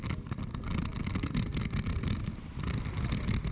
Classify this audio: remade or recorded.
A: recorded